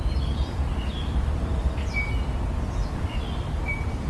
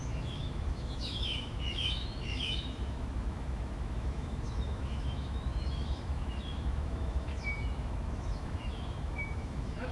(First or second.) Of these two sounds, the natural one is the first